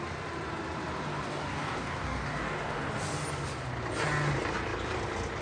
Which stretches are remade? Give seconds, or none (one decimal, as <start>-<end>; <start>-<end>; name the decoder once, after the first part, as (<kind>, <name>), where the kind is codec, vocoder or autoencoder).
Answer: 1.1-2.9 (codec, DAC)